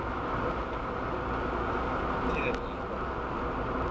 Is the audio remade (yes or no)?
no